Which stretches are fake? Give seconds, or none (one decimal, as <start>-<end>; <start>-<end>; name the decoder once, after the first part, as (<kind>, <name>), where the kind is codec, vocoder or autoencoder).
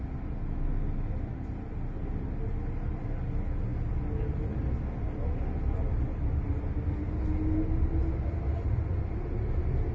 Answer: none